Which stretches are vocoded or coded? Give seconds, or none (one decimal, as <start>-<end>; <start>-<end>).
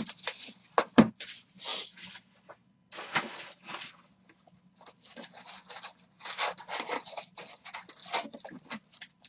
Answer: none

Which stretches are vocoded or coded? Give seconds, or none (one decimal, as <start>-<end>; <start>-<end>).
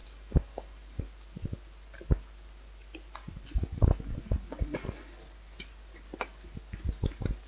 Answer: 0.0-1.0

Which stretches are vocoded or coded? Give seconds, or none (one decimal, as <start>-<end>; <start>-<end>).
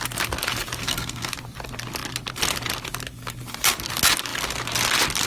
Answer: 0.8-1.3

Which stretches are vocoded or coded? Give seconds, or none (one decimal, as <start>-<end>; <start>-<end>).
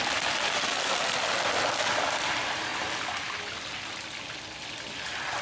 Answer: none